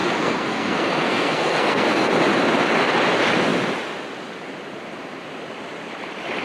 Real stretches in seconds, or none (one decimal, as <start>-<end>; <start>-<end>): 2.1-6.4